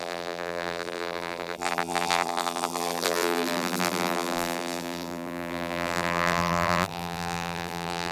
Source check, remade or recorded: remade